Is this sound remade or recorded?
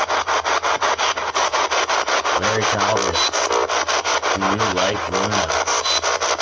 recorded